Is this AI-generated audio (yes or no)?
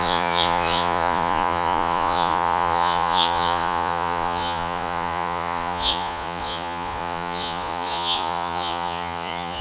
yes